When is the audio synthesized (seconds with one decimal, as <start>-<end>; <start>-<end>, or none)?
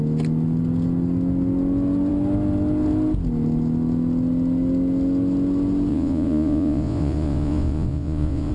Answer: 5.9-8.5